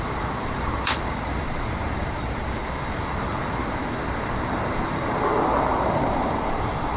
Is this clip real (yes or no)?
no